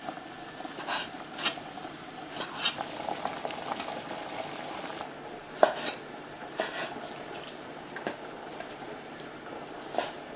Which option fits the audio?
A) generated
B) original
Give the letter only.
A